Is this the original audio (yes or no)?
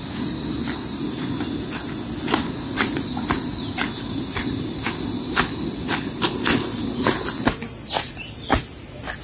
yes